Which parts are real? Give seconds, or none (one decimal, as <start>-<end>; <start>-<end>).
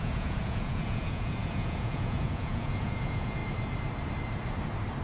3.4-5.0